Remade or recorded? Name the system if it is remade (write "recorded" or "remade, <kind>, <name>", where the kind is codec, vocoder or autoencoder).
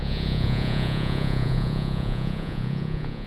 remade, vocoder, Vocos